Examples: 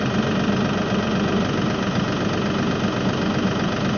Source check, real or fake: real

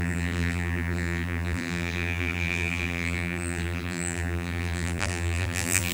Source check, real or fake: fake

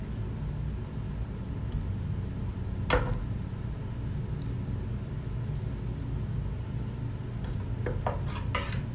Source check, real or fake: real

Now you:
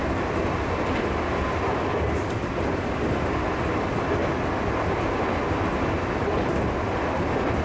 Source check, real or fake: real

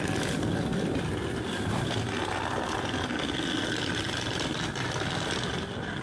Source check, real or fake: real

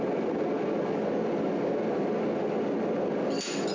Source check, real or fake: real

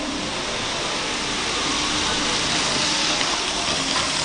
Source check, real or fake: real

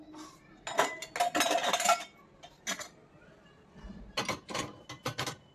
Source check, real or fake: real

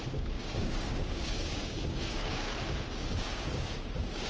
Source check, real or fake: fake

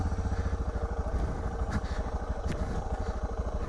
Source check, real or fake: real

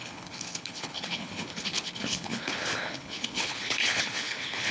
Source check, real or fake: fake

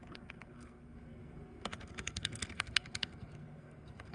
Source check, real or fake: fake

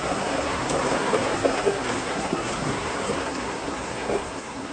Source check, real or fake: fake